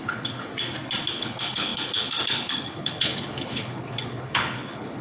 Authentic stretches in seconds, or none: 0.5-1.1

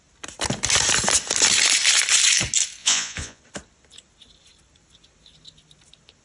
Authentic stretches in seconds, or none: 0.0-2.8; 3.4-6.2

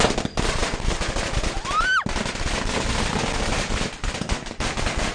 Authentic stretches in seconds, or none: 0.0-5.1

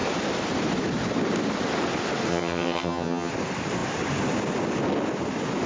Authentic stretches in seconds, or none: 0.0-2.3; 3.3-5.7

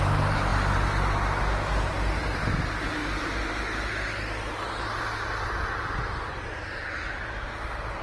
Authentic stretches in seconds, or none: 0.0-8.0